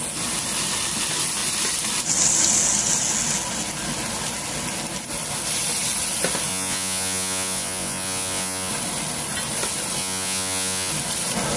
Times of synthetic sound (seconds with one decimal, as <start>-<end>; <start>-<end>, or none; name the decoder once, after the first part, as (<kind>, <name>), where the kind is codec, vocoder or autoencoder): 6.5-8.7 (vocoder, Vocos); 10.0-10.9